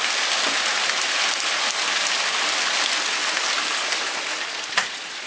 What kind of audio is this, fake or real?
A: real